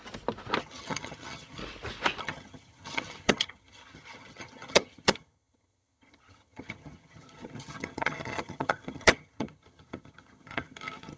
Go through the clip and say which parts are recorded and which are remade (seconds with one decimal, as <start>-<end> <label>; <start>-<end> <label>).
0.0-0.6 recorded; 0.6-1.6 remade; 1.6-2.2 recorded; 2.2-11.2 remade